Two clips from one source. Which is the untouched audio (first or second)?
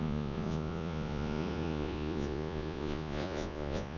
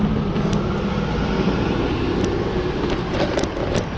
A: second